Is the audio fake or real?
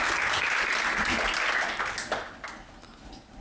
real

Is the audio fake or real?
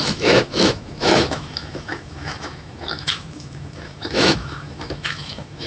fake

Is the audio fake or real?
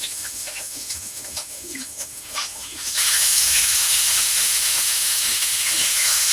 fake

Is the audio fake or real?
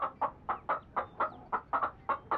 real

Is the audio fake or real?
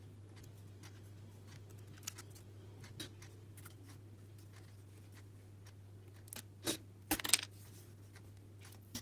real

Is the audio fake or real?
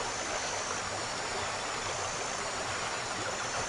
real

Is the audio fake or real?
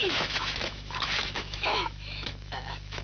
fake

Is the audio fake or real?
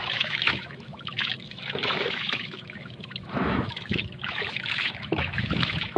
fake